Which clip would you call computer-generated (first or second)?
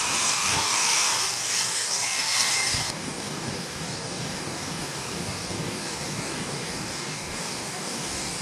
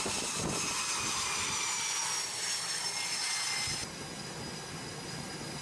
first